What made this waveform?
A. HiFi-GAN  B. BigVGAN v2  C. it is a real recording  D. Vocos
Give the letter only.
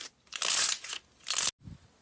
C